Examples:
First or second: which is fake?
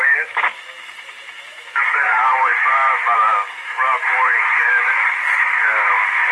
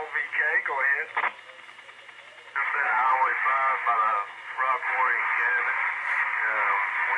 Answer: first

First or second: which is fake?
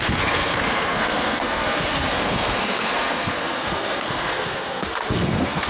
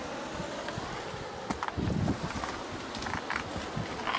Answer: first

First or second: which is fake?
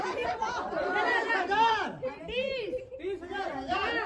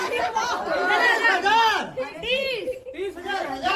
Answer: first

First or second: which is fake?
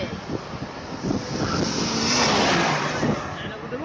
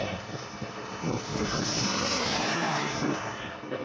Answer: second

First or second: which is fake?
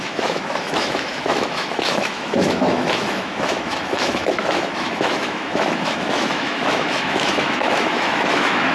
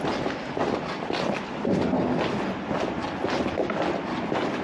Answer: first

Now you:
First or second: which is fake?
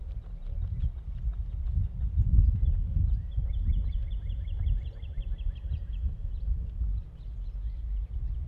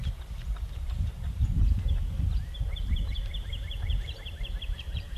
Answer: second